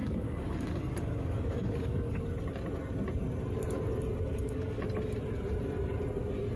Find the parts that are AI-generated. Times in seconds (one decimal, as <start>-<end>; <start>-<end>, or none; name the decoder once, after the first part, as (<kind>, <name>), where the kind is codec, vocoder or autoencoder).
0.0-2.2 (codec, DAC); 4.3-4.8